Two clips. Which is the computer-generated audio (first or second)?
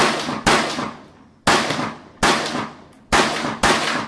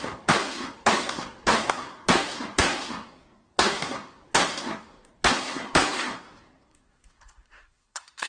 second